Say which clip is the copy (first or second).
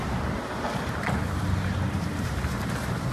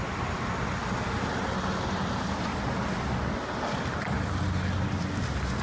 first